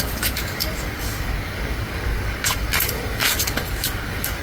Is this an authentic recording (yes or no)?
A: no